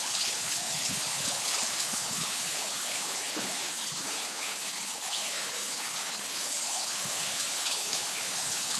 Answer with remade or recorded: remade